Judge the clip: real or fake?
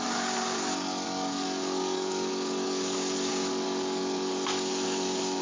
fake